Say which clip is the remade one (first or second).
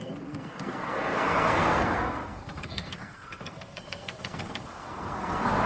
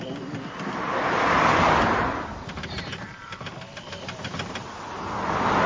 first